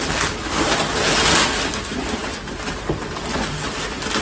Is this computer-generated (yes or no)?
no